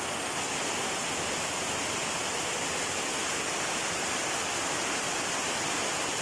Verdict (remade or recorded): recorded